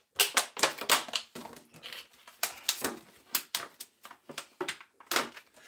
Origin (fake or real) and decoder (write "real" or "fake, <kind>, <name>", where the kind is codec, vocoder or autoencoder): real